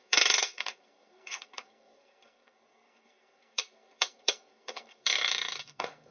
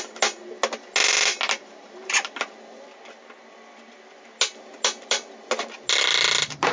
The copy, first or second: first